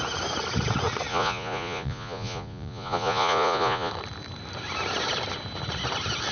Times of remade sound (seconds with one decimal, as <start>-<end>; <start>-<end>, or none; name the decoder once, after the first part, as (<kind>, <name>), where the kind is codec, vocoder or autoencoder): 1.1-3.9 (vocoder, Vocos)